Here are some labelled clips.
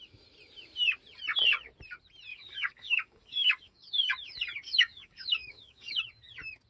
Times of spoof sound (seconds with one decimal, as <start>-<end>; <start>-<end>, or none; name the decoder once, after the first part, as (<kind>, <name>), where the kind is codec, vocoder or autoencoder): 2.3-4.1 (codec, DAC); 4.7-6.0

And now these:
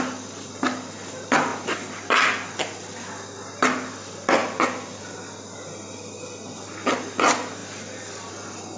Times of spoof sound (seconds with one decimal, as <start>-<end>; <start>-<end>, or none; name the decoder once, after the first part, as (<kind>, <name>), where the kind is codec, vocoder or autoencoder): 1.5-2.9 (vocoder, BigVGAN v2); 7.6-8.3

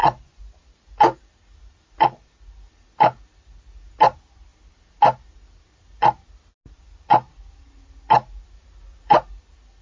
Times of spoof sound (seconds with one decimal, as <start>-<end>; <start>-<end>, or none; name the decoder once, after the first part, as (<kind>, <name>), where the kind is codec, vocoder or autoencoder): 0.0-0.6 (vocoder, Vocos)

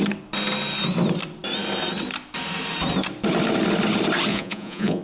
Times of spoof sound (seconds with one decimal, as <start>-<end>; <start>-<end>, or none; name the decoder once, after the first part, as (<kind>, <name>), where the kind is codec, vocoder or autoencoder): 4.3-5.0 (vocoder, Vocos)

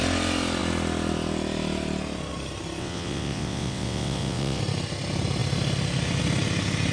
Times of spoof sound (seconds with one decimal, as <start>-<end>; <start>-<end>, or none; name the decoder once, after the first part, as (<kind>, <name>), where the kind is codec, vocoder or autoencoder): 2.8-4.6 (vocoder, WaveNeXt)